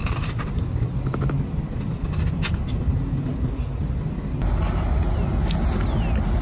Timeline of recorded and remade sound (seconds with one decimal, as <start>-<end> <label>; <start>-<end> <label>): 0.0-6.4 recorded

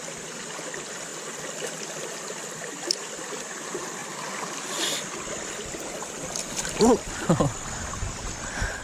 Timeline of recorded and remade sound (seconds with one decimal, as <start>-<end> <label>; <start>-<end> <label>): 0.0-8.8 recorded

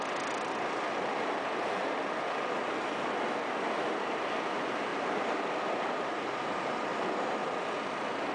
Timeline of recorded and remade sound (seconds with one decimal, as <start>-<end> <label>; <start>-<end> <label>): 0.0-4.9 recorded; 4.9-6.3 remade; 6.3-8.3 recorded

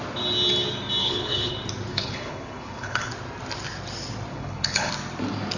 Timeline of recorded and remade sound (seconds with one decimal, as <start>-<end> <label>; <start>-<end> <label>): 0.0-1.0 recorded; 1.0-1.5 remade; 1.5-1.9 recorded; 1.9-3.1 remade; 3.1-4.3 recorded; 4.3-4.9 remade; 4.9-5.6 recorded

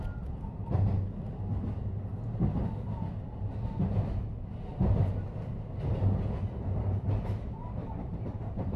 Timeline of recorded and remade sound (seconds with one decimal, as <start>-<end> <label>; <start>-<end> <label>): 0.0-7.8 recorded; 7.8-8.8 remade

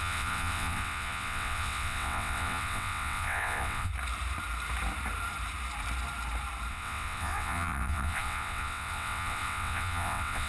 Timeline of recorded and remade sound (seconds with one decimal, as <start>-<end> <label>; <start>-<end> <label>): 0.0-3.9 remade; 3.9-6.7 recorded; 6.7-10.5 remade

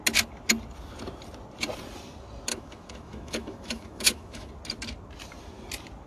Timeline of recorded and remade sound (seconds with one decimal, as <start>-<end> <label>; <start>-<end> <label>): 0.0-2.5 recorded; 2.5-4.5 remade; 4.5-6.1 recorded